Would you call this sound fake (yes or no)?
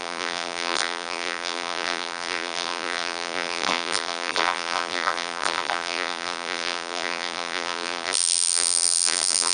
yes